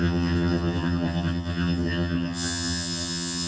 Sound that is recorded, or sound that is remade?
remade